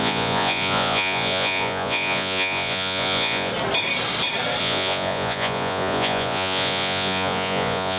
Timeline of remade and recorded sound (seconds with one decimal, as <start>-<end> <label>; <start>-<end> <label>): 0.0-3.5 remade; 3.5-4.6 recorded; 4.6-8.0 remade